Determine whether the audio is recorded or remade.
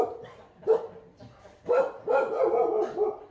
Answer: recorded